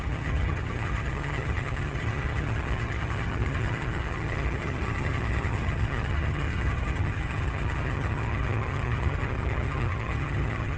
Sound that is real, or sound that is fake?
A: fake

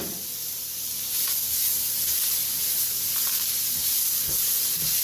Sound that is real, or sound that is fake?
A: real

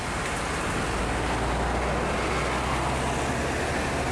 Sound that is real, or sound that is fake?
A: real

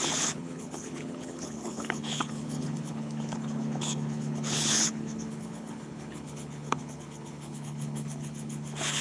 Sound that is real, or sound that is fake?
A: fake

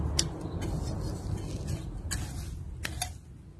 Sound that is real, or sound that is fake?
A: real